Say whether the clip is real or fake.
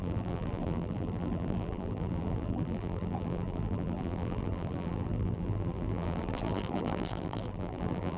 fake